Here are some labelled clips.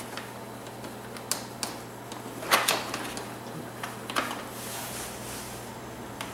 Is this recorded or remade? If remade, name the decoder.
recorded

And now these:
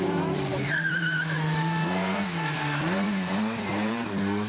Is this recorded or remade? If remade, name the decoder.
remade, vocoder, BigVGAN v2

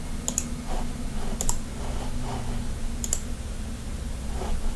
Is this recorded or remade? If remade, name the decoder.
recorded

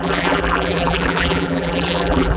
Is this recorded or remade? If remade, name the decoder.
remade, vocoder, BigVGAN v2